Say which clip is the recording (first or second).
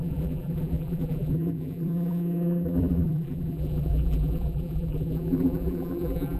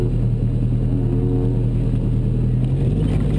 second